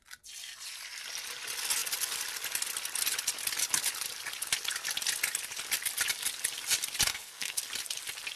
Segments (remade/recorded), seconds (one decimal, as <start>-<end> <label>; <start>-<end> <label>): 0.0-7.1 recorded; 7.1-7.6 remade; 7.6-8.4 recorded